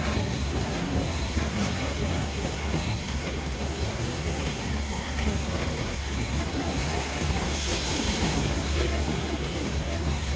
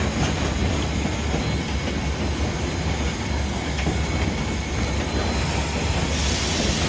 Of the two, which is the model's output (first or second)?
first